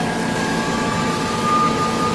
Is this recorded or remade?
remade